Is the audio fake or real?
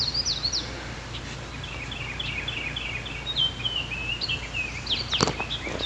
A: real